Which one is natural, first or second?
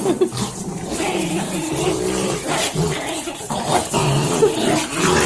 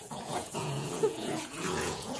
first